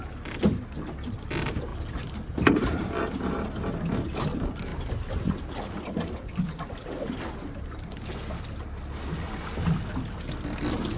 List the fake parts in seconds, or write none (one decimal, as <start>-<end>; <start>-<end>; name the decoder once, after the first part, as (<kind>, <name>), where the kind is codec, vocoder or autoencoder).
1.7-3.0 (vocoder, BigVGAN v2); 4.7-8.4